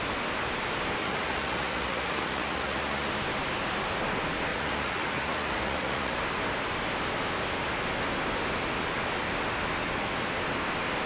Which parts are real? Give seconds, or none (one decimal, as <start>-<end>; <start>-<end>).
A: 0.0-1.0; 3.1-4.5; 6.2-11.1